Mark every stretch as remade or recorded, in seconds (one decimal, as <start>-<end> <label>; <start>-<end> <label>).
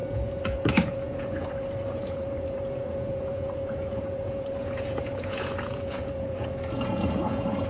0.0-7.7 remade